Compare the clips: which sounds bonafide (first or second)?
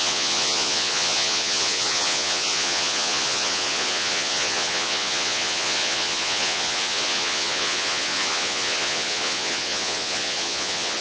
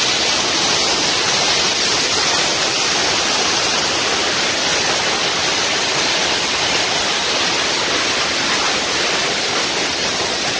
second